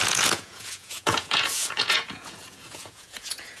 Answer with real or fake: fake